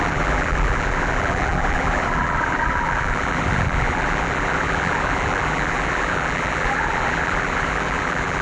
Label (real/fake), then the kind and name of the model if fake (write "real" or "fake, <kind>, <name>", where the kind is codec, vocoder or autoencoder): fake, vocoder, BigVGAN v2